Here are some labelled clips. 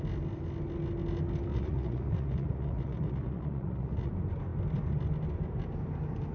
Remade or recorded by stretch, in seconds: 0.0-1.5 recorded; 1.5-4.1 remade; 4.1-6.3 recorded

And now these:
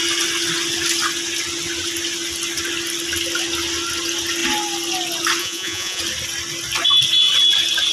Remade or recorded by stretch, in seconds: 0.0-5.4 recorded; 5.4-6.0 remade; 6.0-7.9 recorded

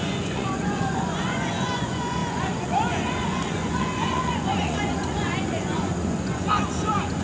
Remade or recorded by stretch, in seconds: 0.0-7.2 remade

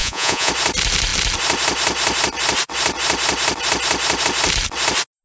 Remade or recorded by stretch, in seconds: 0.0-0.5 remade; 0.5-5.2 recorded

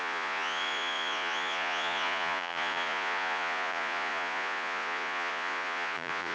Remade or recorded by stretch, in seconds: 0.0-6.3 remade

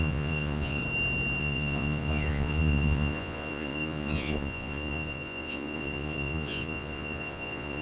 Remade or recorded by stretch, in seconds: 0.0-0.8 remade; 0.8-1.4 recorded; 1.4-7.8 remade